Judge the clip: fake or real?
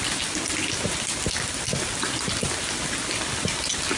real